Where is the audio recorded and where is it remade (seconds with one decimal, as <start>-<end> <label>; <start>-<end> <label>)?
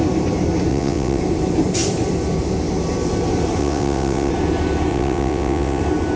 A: 0.0-0.7 recorded; 0.7-1.2 remade; 1.2-3.6 recorded; 3.6-4.3 remade; 4.3-4.9 recorded; 4.9-5.8 remade; 5.8-6.2 recorded